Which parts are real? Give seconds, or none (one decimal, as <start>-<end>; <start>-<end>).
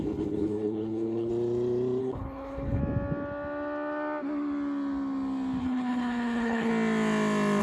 1.3-2.0; 2.8-5.6; 6.7-7.6